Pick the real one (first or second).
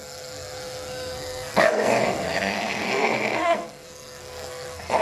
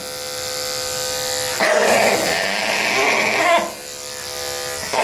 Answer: second